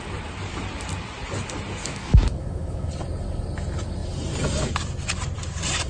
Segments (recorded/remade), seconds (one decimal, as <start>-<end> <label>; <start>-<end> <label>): 0.0-1.8 recorded; 1.8-2.9 remade; 2.9-5.9 recorded